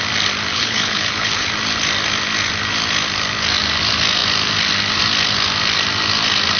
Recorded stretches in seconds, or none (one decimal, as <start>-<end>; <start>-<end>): 0.0-0.5; 1.5-6.6